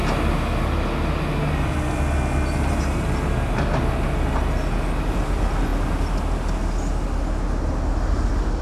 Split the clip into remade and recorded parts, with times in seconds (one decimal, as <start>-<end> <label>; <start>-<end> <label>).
0.0-8.6 recorded